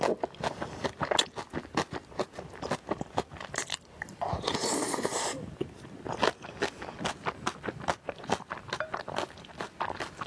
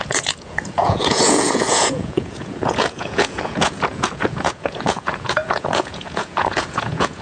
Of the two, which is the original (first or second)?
first